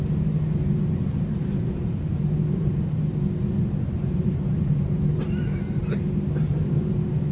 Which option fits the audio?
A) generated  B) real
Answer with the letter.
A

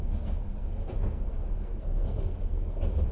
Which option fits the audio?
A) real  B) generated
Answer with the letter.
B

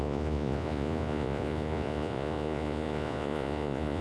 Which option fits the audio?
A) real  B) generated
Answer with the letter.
B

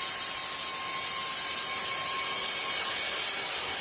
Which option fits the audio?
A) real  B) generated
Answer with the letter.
A